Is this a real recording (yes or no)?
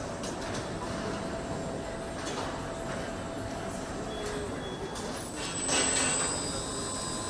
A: yes